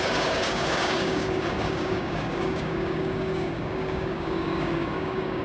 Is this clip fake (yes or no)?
yes